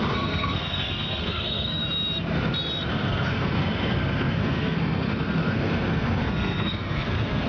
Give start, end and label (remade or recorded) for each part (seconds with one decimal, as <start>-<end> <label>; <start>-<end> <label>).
0.0-1.8 remade; 1.8-2.9 recorded; 2.9-7.5 remade